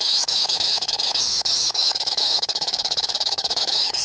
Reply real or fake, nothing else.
fake